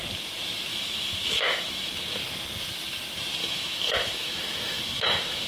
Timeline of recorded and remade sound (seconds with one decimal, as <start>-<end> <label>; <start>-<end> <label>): 0.0-0.7 recorded; 0.7-2.2 remade; 2.2-3.4 recorded; 3.4-5.5 remade

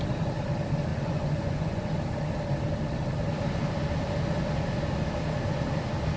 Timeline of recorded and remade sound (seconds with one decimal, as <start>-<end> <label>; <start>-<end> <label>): 0.0-0.9 recorded; 0.9-1.9 remade; 1.9-6.2 recorded

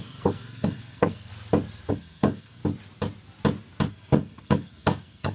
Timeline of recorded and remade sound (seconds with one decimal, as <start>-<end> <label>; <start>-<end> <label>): 0.0-1.3 remade; 1.3-1.9 recorded; 1.9-2.6 remade; 2.6-3.9 recorded; 3.9-5.3 remade

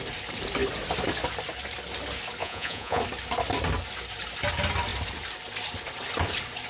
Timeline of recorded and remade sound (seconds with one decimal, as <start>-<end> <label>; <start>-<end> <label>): 0.0-2.4 recorded; 2.4-3.0 remade; 3.0-6.7 recorded